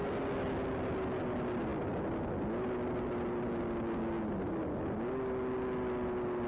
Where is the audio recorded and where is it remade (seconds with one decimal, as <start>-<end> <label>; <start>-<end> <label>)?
0.0-6.5 recorded